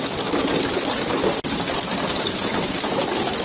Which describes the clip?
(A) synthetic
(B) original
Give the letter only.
B